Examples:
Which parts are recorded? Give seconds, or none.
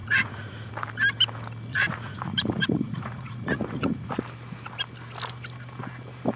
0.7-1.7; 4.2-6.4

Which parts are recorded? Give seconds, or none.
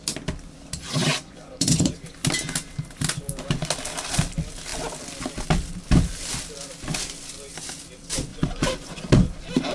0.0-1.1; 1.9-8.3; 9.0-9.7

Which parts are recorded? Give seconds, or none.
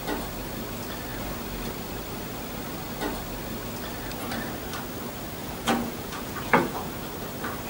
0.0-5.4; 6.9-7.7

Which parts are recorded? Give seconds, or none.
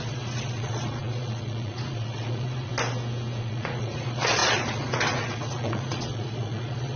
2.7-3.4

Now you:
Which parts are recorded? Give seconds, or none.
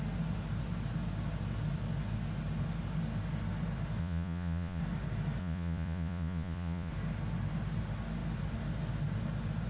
0.0-4.0; 4.8-5.4; 6.9-9.7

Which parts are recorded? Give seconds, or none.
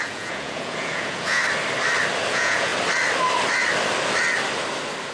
1.4-2.3; 2.7-5.1